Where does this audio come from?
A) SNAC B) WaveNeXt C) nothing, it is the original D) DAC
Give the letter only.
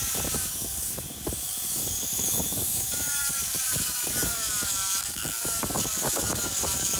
D